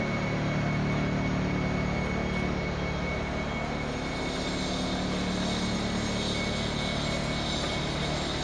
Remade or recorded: recorded